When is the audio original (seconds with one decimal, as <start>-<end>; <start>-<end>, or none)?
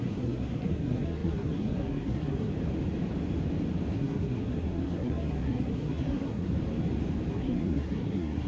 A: 2.5-3.9; 6.5-7.3